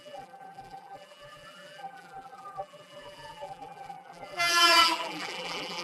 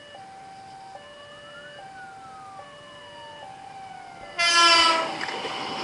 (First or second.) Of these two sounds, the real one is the second